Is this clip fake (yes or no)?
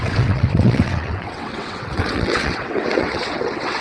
yes